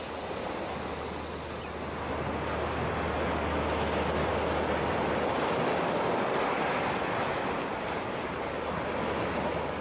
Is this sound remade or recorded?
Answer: recorded